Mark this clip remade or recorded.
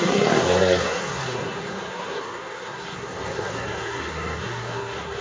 remade